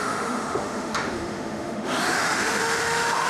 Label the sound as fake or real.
fake